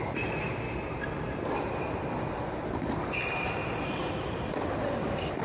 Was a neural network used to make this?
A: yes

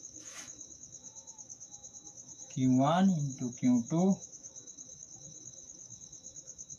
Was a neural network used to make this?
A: yes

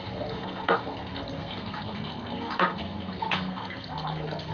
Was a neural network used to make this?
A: yes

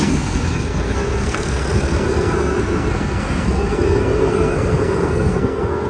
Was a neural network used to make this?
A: yes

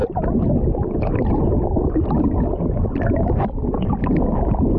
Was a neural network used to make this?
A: no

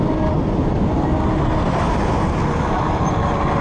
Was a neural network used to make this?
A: no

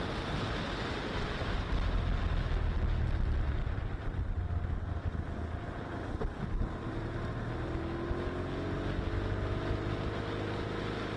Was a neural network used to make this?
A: no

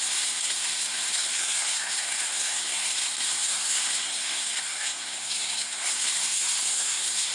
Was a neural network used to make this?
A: yes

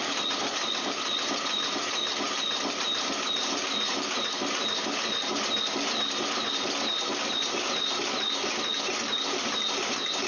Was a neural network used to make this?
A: no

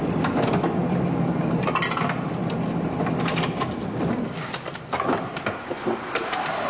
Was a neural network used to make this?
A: no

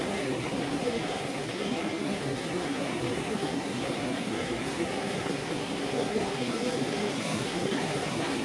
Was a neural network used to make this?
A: yes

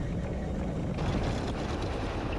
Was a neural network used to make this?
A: no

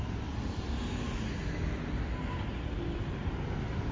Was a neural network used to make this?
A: no